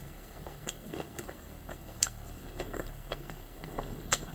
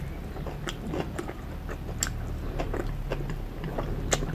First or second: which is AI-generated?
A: first